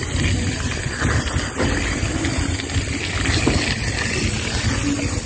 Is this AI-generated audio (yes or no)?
no